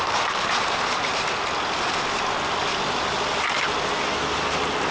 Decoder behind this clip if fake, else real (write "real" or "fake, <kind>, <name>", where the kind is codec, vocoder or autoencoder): real